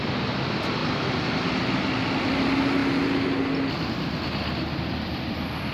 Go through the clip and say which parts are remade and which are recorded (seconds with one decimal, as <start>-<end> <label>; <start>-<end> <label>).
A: 0.0-5.7 recorded